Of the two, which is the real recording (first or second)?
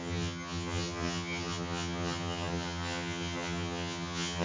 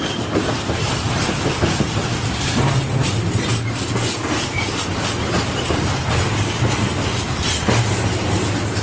second